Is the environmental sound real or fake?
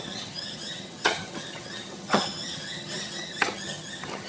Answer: fake